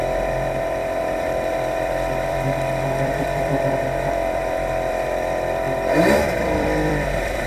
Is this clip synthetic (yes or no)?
yes